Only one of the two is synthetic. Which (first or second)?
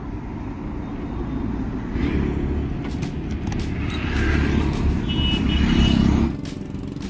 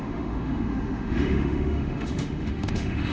second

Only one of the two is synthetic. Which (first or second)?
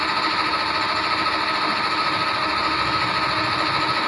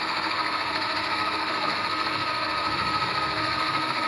second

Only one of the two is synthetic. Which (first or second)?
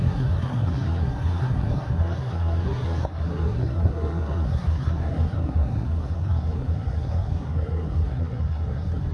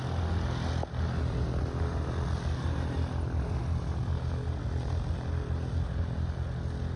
first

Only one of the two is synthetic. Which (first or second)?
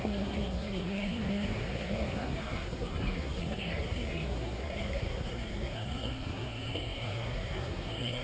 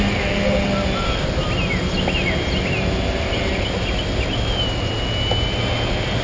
first